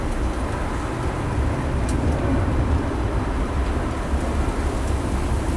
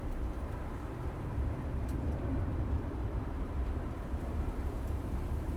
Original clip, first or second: first